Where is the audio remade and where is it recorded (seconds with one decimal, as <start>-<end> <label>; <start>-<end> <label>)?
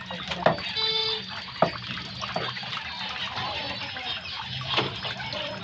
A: 0.0-5.6 recorded